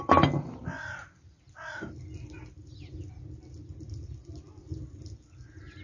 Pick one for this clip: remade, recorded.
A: recorded